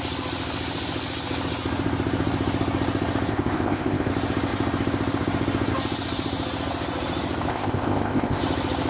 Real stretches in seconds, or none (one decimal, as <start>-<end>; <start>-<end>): 0.0-3.3; 4.1-7.5; 8.4-8.9